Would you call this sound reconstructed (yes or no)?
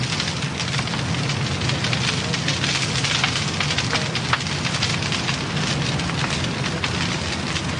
no